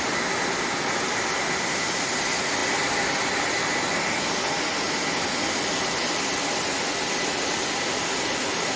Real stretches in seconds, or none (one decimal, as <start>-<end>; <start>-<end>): 0.0-8.8